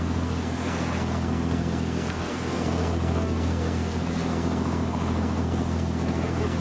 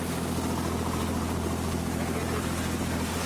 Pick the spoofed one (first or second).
first